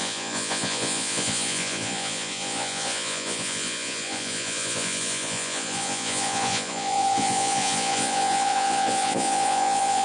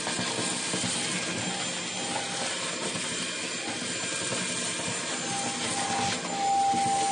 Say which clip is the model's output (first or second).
first